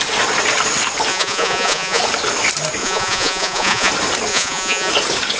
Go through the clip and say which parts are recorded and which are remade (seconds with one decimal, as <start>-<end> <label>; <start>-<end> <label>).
0.0-1.1 recorded; 1.1-2.0 remade; 2.0-2.8 recorded; 2.8-3.9 remade; 3.9-4.3 recorded; 4.3-4.9 remade; 4.9-5.4 recorded

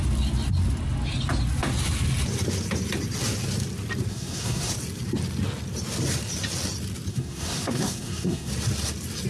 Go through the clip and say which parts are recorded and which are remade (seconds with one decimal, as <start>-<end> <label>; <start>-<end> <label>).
0.0-4.1 recorded; 4.1-4.7 remade; 4.7-7.1 recorded; 7.1-8.5 remade; 8.5-9.3 recorded

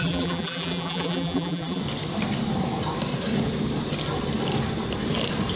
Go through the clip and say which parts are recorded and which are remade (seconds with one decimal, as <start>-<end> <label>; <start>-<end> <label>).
0.0-1.8 remade; 1.8-5.6 recorded

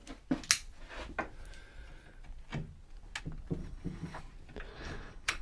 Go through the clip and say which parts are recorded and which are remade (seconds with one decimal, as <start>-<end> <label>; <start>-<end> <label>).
0.0-3.6 recorded; 3.6-4.2 remade; 4.2-4.7 recorded; 4.7-5.4 remade

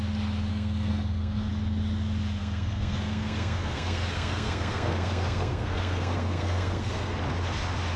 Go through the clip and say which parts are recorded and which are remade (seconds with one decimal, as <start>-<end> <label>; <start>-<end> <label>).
0.0-0.5 recorded; 0.5-1.5 remade; 1.5-2.4 recorded; 2.4-7.2 remade; 7.2-8.0 recorded

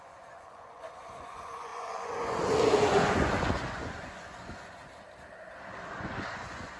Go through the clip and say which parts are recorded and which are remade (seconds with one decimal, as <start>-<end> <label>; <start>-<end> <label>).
0.0-4.8 remade; 4.8-5.9 recorded; 5.9-6.8 remade

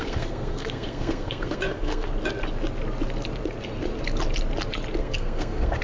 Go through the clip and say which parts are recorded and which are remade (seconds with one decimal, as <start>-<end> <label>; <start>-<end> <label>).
0.0-2.1 remade; 2.1-5.0 recorded; 5.0-5.8 remade

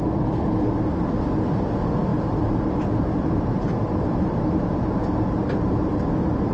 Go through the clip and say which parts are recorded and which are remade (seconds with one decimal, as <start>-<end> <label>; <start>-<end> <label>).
0.0-2.1 recorded; 2.1-6.0 remade; 6.0-6.5 recorded